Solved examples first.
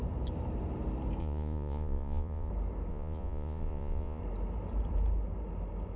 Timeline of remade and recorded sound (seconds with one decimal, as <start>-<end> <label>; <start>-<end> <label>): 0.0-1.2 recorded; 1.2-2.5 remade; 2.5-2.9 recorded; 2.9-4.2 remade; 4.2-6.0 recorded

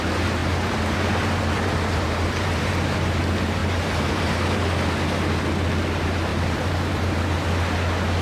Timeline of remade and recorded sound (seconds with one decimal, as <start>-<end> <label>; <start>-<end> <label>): 0.0-0.4 recorded; 0.4-3.1 remade; 3.1-3.6 recorded; 3.6-4.6 remade; 4.6-6.3 recorded; 6.3-7.1 remade; 7.1-8.2 recorded

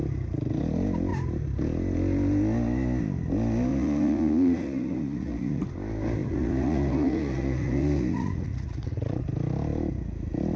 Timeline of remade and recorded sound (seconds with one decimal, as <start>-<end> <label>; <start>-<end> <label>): 0.0-3.7 recorded; 3.7-5.6 remade; 5.6-6.2 recorded; 6.2-9.2 remade; 9.2-10.6 recorded